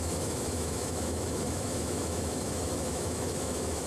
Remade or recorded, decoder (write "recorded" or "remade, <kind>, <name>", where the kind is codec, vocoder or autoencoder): remade, autoencoder, DAC-VAE